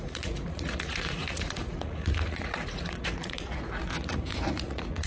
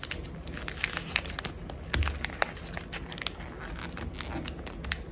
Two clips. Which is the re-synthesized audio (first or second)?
first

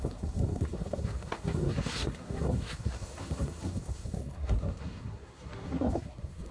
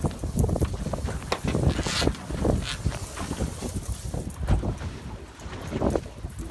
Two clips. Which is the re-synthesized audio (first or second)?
first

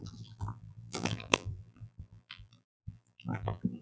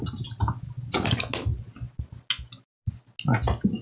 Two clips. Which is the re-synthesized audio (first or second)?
first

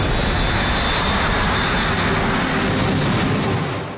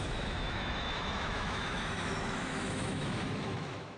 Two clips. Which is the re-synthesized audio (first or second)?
second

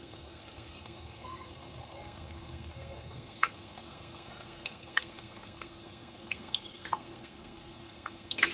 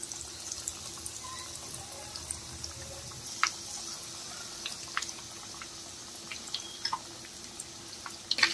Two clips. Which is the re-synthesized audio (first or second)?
first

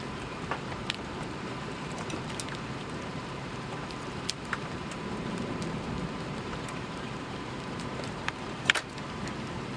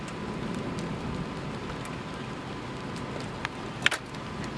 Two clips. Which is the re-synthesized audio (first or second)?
first